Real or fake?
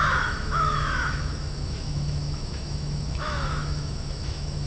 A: fake